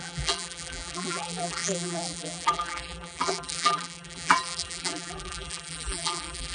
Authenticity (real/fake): fake